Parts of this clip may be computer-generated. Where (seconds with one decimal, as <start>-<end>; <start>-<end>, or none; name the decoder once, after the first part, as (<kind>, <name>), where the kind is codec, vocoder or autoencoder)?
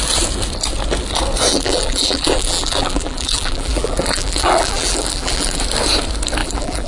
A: 1.5-5.6 (vocoder, BigVGAN v2); 6.4-6.9